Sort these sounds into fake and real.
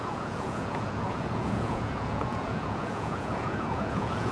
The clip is fake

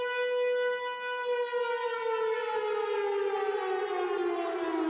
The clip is real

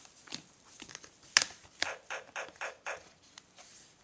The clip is real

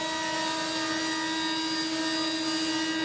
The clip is real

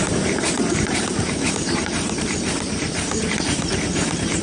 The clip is fake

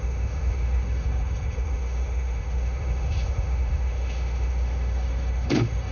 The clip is fake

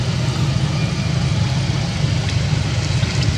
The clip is real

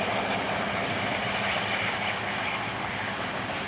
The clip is real